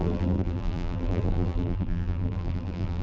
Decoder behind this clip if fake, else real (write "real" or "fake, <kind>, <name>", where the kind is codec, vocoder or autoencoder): fake, vocoder, BigVGAN v2